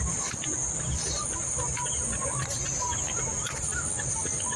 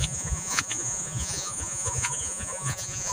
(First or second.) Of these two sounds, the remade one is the second